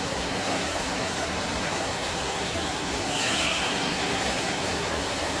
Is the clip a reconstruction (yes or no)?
yes